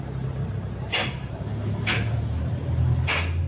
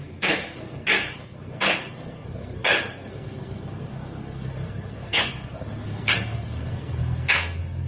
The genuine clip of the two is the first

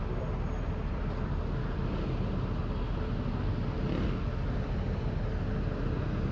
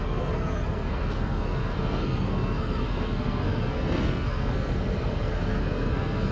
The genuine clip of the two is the first